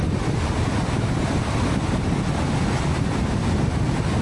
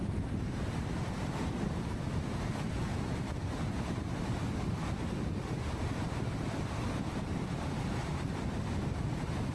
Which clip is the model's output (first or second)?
second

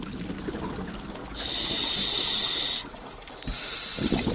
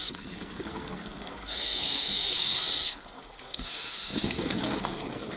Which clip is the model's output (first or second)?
second